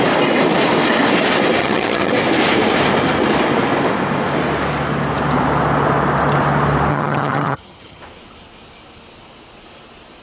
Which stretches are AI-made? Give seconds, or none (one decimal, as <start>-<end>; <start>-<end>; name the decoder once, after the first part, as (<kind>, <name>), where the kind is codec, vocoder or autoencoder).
1.6-2.1 (vocoder, HiFi-GAN); 6.9-8.0